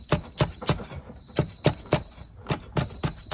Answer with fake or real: real